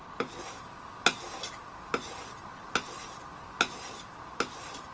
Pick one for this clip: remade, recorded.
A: recorded